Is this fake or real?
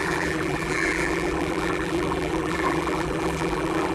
fake